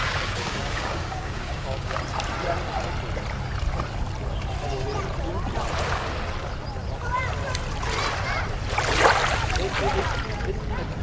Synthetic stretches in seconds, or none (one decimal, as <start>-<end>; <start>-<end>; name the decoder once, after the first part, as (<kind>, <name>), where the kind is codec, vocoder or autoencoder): 0.0-2.0 (codec, DAC)